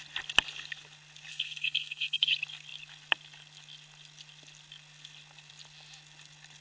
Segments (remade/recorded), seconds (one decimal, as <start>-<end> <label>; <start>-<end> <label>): 0.0-1.3 recorded; 1.3-2.3 remade; 2.3-6.6 recorded